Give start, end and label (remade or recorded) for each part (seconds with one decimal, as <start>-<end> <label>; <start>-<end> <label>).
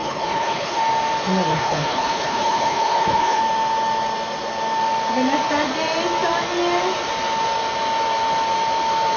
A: 0.0-0.8 remade; 0.8-1.5 recorded; 1.5-3.4 remade; 3.4-9.2 recorded